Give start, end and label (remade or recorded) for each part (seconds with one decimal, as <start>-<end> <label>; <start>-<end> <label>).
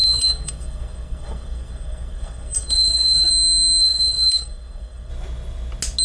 0.0-3.3 remade; 3.3-3.8 recorded; 3.8-5.1 remade; 5.1-6.0 recorded